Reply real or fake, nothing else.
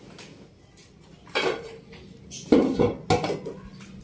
real